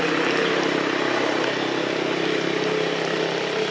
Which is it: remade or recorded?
recorded